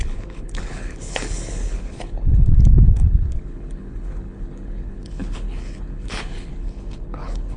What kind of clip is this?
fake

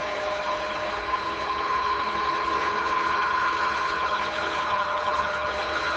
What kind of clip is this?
fake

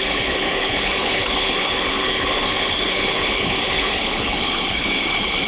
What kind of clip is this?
fake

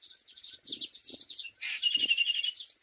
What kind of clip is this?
real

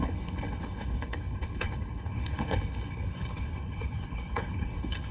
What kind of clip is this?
fake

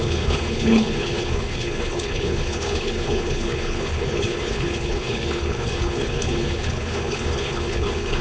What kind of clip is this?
fake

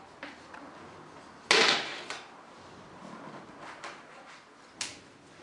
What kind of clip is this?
real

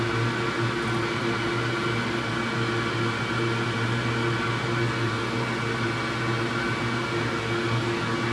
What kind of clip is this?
real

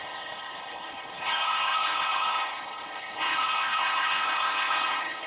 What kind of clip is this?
fake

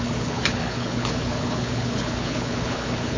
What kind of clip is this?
fake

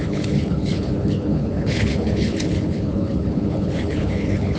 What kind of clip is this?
fake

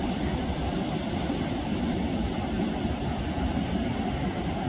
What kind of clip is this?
real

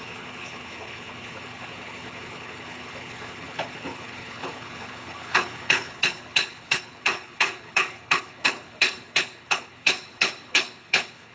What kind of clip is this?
fake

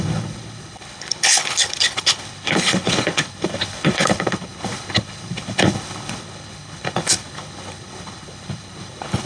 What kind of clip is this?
fake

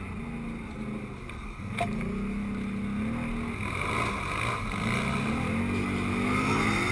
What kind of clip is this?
real